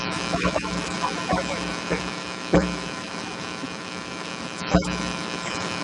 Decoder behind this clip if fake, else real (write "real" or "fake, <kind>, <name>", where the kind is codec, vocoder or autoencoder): fake, autoencoder, DAC-VAE